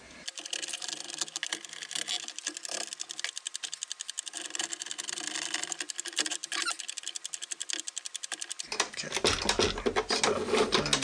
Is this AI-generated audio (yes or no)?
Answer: no